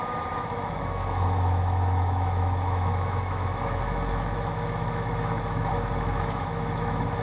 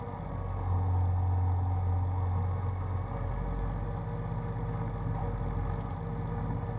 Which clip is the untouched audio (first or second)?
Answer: second